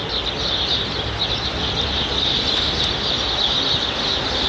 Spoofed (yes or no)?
no